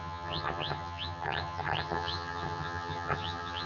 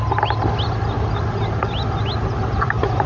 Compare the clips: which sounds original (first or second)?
second